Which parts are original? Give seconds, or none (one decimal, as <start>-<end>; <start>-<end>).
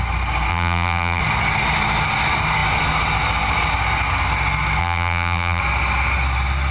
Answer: 0.0-0.5; 1.2-4.8; 5.6-6.7